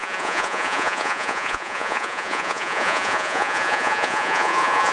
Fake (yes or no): yes